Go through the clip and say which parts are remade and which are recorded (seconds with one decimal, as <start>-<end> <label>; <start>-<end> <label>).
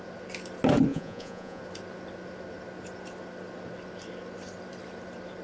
0.0-0.9 recorded; 0.9-1.6 remade; 1.6-5.4 recorded